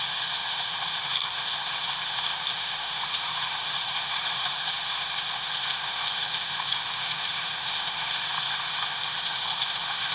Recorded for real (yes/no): no